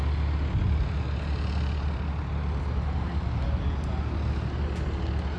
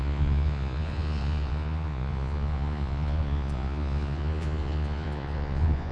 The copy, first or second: second